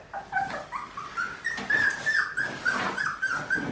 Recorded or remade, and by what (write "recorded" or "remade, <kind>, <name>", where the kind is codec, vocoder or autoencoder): recorded